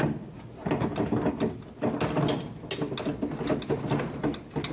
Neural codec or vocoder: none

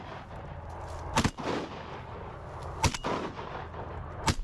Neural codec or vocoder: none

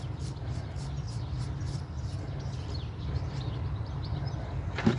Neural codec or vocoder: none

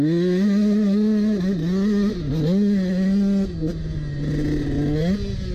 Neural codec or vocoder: none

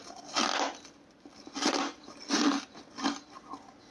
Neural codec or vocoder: none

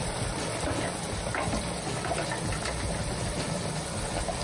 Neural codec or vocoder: none